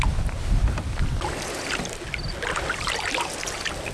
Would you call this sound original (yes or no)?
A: yes